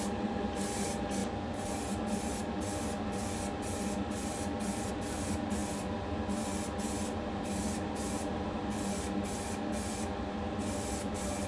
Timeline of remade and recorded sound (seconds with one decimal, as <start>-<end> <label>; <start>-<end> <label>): 0.0-1.2 remade; 1.2-4.9 recorded; 4.9-5.6 remade; 5.6-7.3 recorded; 7.3-8.6 remade; 8.6-11.0 recorded; 11.0-11.5 remade